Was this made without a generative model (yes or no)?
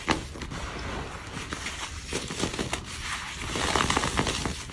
yes